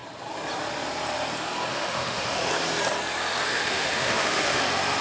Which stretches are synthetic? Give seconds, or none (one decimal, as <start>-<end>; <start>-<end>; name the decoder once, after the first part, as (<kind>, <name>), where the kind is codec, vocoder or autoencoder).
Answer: 1.7-2.5 (autoencoder, DAC-VAE); 3.5-4.6